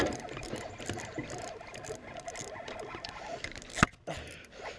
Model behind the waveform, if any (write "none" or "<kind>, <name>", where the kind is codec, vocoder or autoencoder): none